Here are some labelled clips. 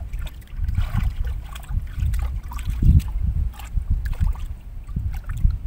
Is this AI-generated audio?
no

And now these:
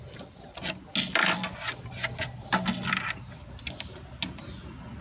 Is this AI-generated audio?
no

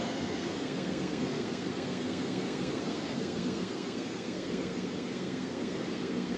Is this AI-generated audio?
yes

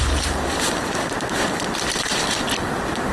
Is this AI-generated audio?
yes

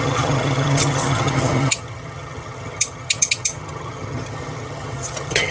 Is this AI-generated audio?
yes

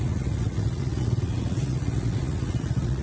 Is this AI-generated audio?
yes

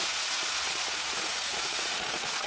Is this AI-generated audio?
yes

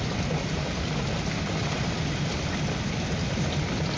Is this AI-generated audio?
no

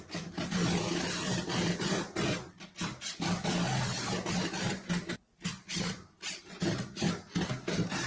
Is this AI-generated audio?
no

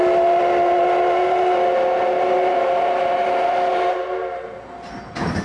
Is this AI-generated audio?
no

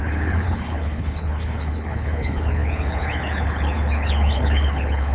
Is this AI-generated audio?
yes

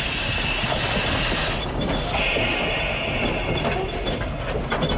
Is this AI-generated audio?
no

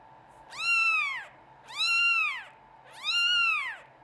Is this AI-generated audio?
no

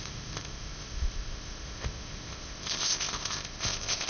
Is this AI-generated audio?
yes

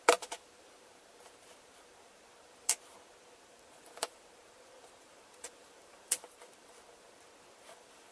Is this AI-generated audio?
yes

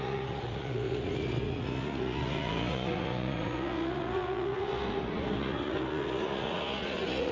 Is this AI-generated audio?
yes